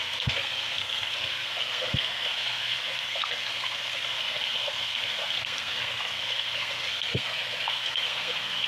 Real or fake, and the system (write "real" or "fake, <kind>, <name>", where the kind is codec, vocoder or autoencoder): fake, codec, SNAC